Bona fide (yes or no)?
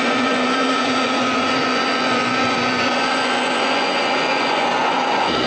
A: no